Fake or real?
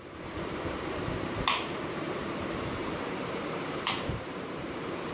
fake